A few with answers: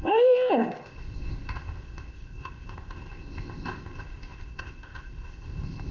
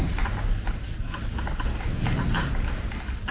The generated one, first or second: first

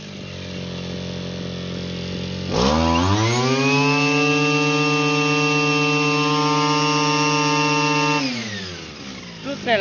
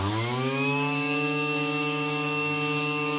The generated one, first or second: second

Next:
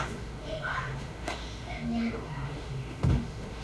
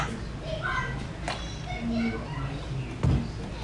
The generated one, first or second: first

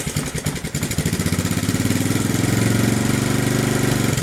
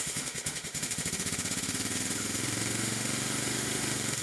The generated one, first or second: second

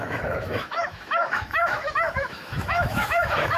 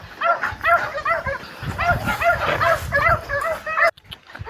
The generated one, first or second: first